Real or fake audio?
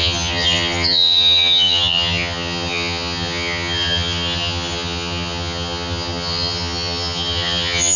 fake